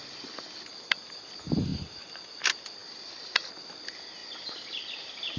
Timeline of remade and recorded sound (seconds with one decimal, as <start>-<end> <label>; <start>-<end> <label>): 0.0-5.4 recorded